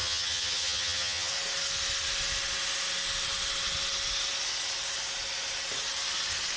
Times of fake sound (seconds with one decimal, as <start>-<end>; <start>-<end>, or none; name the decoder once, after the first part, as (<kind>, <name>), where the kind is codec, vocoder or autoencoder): 0.0-1.3 (vocoder, HiFi-GAN)